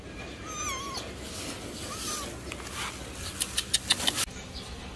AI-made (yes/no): no